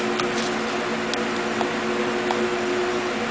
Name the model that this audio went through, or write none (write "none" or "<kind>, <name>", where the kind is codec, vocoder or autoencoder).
none